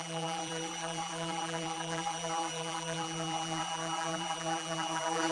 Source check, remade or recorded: remade